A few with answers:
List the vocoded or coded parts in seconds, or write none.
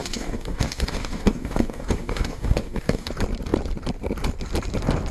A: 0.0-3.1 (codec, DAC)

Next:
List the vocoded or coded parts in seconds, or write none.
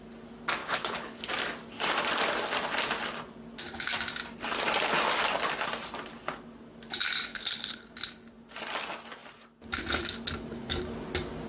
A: 0.6-1.2 (codec, HILCodec); 7.3-7.9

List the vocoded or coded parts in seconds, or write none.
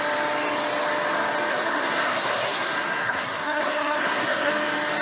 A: 1.5-4.5 (codec, SNAC)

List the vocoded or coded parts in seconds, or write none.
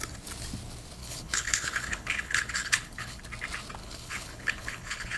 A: 1.0-3.2 (codec, HILCodec); 3.8-5.2